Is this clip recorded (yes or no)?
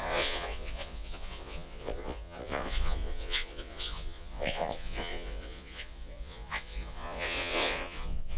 no